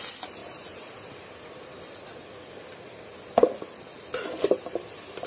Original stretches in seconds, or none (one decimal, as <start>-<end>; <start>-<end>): 0.0-5.3